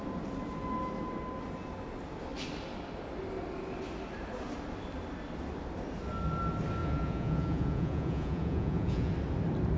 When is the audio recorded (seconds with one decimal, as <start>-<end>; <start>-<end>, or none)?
0.0-6.8; 9.1-9.8